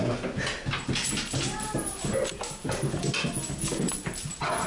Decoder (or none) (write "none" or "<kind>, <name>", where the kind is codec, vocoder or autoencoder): none